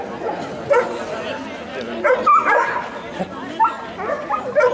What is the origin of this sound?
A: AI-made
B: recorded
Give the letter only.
B